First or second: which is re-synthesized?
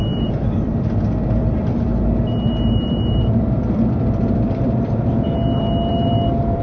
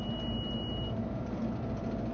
first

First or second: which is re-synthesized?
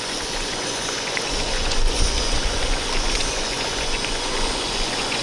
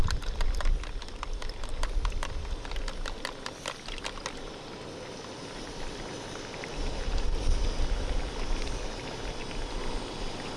first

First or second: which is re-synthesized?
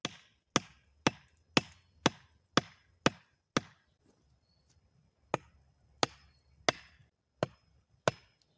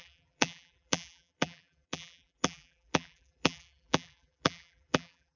second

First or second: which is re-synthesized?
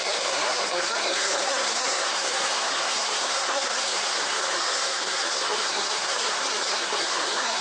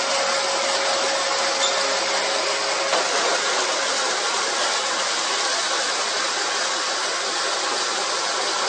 first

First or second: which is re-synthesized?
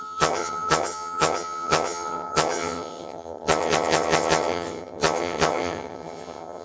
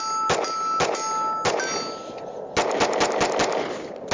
first